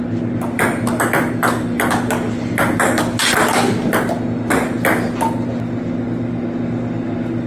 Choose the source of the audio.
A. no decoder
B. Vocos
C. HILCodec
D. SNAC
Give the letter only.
A